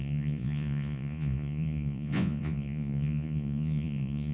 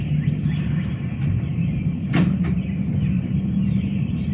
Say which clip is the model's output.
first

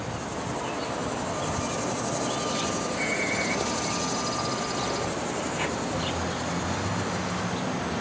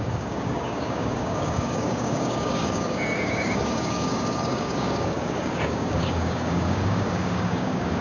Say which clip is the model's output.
second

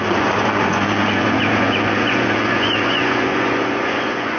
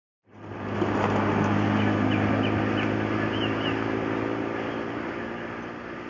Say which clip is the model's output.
first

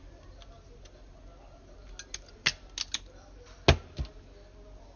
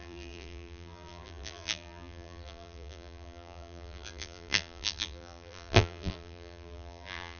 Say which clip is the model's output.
second